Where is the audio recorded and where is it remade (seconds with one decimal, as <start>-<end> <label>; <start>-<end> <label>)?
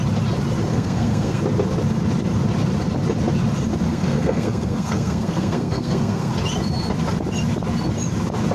0.0-0.7 recorded; 0.7-1.4 remade; 1.4-3.9 recorded; 3.9-6.3 remade; 6.3-8.5 recorded